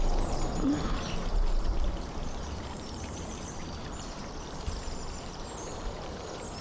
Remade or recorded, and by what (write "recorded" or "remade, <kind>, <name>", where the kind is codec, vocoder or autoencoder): remade, vocoder, BigVGAN v2